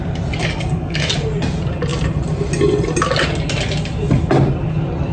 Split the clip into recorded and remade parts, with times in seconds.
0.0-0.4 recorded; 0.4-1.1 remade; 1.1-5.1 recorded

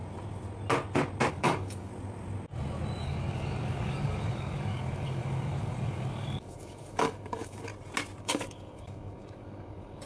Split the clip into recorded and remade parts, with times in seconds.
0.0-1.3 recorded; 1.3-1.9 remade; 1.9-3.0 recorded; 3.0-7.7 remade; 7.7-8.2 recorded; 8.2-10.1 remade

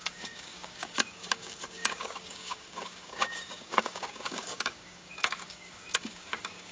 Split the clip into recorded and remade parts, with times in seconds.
0.0-6.7 remade